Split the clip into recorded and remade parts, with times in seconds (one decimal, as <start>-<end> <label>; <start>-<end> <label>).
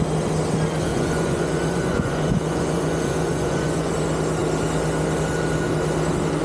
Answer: 0.0-0.9 recorded; 0.9-3.9 remade; 3.9-6.4 recorded